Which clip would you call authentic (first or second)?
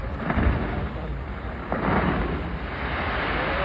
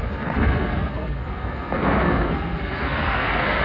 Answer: first